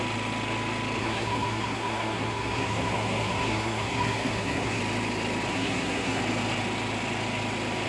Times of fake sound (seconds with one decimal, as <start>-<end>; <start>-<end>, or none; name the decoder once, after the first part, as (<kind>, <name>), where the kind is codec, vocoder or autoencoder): 1.0-4.8 (codec, SNAC); 5.5-6.2